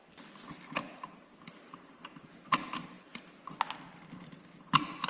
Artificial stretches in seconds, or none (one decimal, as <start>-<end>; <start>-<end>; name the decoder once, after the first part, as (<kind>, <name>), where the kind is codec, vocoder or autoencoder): none